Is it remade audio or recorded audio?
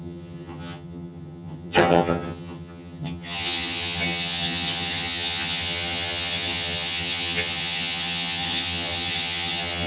remade